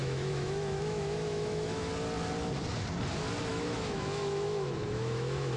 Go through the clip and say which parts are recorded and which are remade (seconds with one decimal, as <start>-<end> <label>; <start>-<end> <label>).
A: 0.0-1.9 remade; 1.9-3.5 recorded; 3.5-5.6 remade